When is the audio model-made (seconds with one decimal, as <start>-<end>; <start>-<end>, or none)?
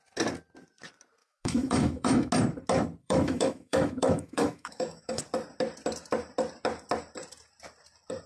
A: 1.2-2.3; 3.0-5.2